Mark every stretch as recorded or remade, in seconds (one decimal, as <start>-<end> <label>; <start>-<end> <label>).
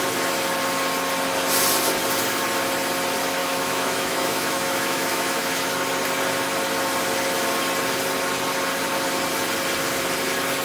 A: 0.0-3.4 recorded; 3.4-5.7 remade; 5.7-10.6 recorded